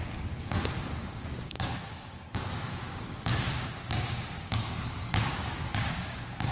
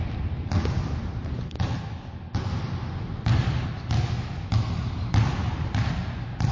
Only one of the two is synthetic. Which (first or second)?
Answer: first